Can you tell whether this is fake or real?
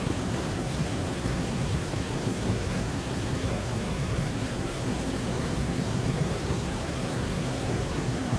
fake